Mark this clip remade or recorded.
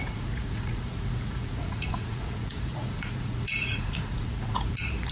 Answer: remade